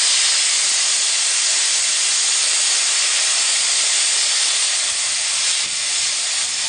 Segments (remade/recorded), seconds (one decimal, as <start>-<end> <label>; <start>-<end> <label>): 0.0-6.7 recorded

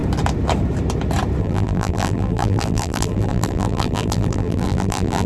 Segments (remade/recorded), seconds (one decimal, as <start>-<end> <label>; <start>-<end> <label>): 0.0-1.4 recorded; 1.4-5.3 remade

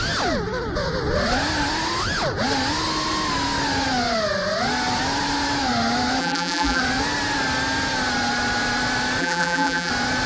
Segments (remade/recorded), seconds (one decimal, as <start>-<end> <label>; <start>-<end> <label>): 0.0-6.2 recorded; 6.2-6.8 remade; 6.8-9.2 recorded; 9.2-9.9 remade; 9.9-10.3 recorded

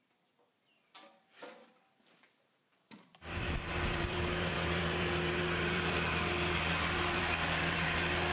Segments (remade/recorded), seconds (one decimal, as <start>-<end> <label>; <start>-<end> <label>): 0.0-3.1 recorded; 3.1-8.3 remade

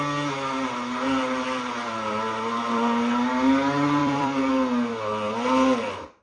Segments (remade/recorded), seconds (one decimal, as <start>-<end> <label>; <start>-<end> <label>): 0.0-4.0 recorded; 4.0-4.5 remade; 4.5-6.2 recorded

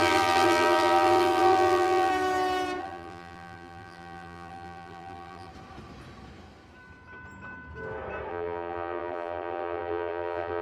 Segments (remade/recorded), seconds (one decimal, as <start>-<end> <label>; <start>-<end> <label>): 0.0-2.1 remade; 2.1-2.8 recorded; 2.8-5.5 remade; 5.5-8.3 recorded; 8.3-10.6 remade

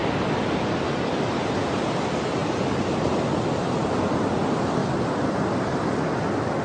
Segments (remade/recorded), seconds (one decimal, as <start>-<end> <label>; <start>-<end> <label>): 0.0-4.8 recorded; 4.8-6.0 remade; 6.0-6.6 recorded

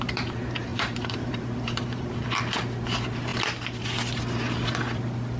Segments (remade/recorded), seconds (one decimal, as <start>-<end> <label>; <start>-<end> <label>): 0.0-0.7 recorded; 0.7-2.1 remade; 2.1-5.4 recorded